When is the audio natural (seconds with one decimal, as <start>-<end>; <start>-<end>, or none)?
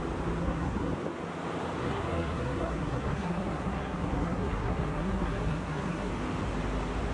0.0-0.4; 0.9-1.8; 6.1-7.1